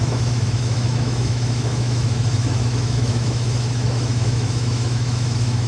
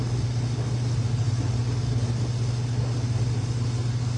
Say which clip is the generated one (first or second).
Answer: first